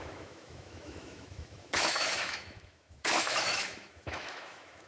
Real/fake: fake